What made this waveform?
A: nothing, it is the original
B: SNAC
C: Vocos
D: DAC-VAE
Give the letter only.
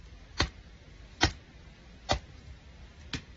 A